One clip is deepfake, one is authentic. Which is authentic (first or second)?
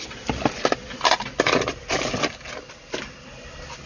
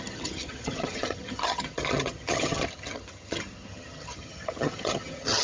first